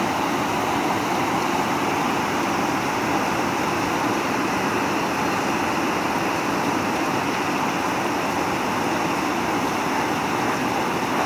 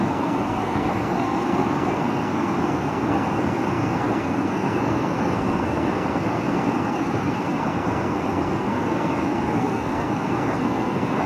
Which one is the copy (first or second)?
second